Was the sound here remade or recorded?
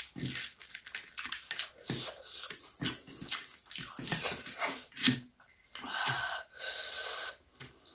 recorded